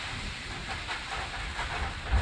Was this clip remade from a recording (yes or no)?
no